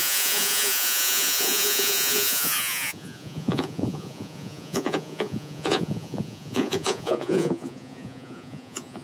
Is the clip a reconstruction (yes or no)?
yes